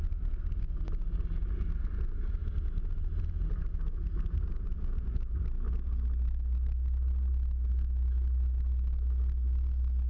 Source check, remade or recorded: recorded